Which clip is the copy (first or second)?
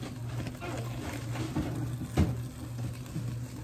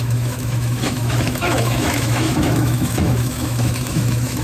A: second